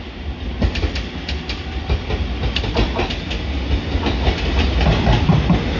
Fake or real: real